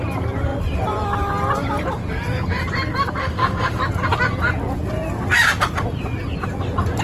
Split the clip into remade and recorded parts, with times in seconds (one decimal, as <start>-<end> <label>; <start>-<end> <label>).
0.0-3.2 recorded; 3.2-3.8 remade; 3.8-7.0 recorded